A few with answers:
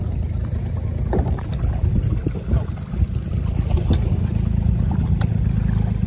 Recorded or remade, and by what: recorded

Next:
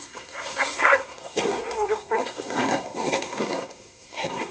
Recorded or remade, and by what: remade, codec, SNAC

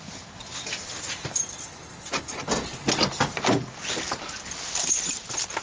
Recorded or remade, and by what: recorded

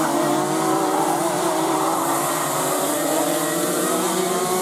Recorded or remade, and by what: remade, vocoder, BigVGAN v2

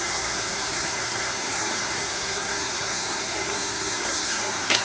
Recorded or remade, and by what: remade, codec, SNAC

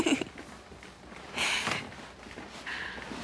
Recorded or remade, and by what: recorded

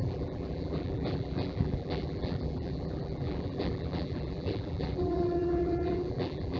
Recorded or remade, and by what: remade, vocoder, BigVGAN v2